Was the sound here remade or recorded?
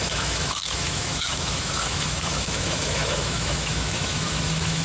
remade